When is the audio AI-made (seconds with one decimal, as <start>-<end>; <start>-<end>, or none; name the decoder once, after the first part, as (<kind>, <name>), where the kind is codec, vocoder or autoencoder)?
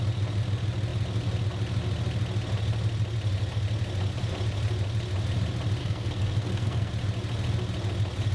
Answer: 5.8-6.9 (codec, SNAC)